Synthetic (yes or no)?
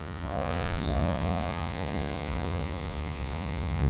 yes